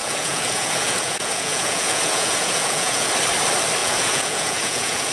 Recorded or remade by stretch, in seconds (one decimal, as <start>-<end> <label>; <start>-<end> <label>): 0.0-3.1 remade; 3.1-3.8 recorded; 3.8-5.1 remade